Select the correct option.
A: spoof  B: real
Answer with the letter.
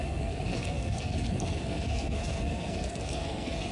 A